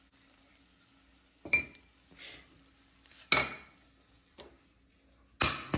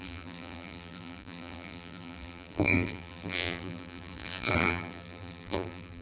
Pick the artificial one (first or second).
second